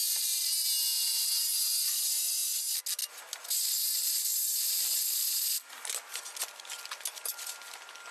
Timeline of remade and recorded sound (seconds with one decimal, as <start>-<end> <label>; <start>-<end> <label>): 0.0-8.1 recorded